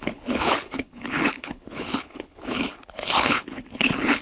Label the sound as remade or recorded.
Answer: remade